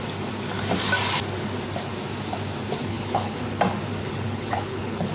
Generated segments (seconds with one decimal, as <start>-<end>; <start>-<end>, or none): 2.8-3.4; 4.0-5.1